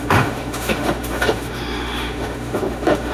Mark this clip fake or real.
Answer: fake